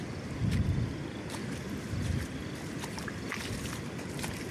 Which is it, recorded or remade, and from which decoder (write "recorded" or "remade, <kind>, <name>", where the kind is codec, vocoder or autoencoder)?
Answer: recorded